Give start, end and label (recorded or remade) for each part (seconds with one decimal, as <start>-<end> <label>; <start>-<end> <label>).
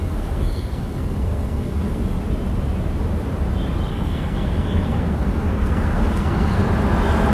0.0-2.0 remade; 2.0-3.9 recorded; 3.9-6.6 remade; 6.6-7.3 recorded